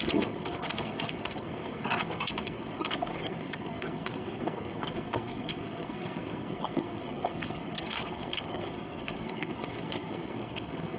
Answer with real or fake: fake